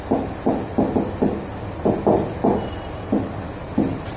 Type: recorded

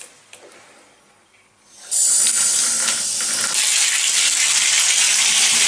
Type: recorded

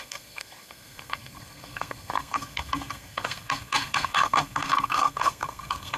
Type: remade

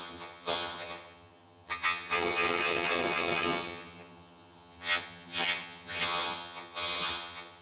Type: remade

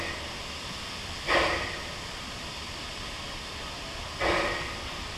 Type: recorded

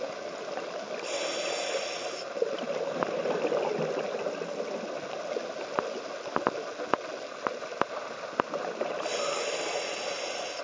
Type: recorded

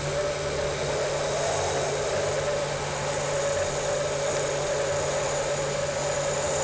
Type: recorded